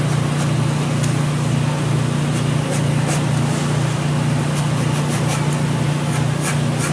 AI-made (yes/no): no